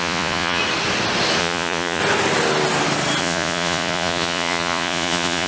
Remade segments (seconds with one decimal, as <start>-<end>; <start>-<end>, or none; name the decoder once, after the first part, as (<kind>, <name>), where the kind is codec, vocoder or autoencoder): 0.0-0.6 (vocoder, Vocos); 1.4-2.0; 3.2-5.5